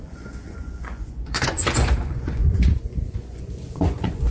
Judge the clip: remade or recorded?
remade